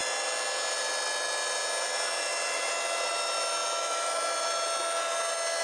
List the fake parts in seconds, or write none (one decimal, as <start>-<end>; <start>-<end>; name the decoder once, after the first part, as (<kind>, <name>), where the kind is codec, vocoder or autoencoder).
none

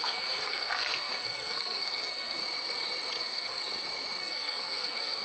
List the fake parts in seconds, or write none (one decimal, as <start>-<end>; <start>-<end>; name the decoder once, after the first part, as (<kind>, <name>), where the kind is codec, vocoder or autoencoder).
0.0-2.4 (codec, SNAC); 3.2-3.6; 4.2-5.2

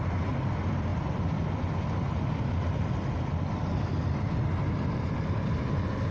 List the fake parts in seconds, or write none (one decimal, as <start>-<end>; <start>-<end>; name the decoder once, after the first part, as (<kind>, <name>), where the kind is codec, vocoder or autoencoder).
none

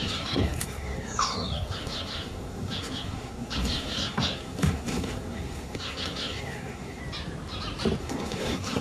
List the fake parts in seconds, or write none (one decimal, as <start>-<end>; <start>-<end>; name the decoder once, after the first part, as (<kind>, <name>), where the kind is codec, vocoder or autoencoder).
0.0-7.0 (codec, SNAC); 8.0-8.8

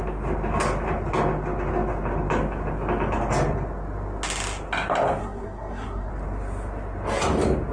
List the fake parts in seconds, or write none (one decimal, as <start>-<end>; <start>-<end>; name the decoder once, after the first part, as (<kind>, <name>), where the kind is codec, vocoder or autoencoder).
5.2-6.1 (codec, SNAC)